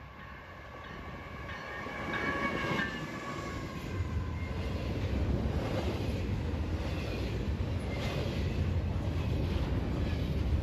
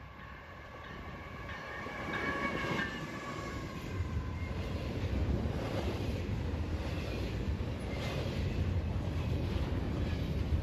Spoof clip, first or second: second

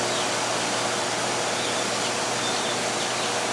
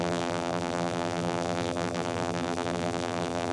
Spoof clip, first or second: second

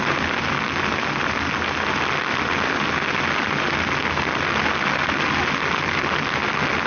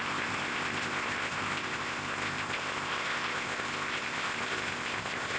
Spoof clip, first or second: second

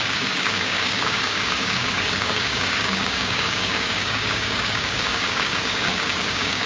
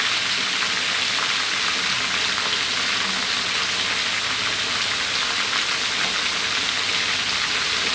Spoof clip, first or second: first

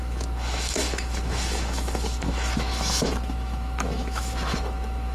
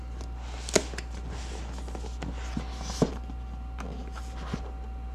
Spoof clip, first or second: first